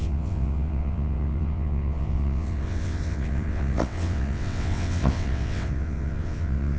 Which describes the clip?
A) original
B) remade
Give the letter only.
B